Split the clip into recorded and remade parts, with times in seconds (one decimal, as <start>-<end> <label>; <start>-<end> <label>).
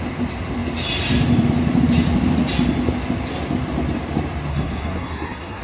0.0-4.5 recorded; 4.5-5.6 remade